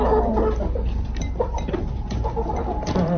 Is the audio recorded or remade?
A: remade